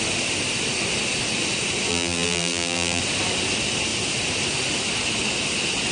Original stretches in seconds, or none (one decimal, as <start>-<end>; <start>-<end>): 0.0-1.9; 3.0-5.9